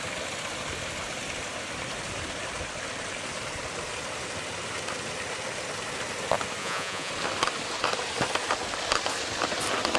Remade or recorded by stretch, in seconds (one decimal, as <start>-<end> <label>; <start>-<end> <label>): 0.0-6.6 recorded; 6.6-7.1 remade; 7.1-10.0 recorded